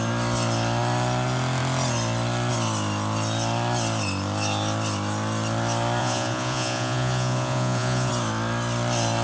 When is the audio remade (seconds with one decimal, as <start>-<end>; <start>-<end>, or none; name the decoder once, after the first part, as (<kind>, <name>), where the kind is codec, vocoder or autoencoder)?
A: 6.0-8.1 (vocoder, Vocos)